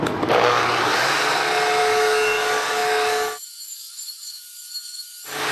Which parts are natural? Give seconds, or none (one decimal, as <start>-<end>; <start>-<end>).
0.9-1.8